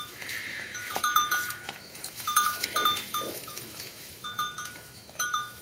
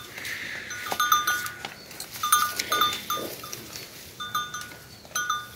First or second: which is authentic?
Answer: second